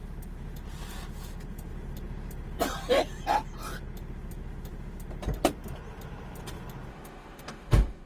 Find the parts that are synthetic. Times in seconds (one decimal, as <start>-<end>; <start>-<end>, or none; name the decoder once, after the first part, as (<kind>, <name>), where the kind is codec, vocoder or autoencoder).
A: 6.9-8.1 (autoencoder, DAC-VAE)